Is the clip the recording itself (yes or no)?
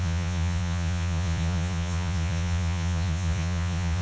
no